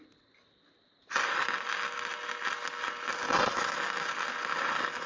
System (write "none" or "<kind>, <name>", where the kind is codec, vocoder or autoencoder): none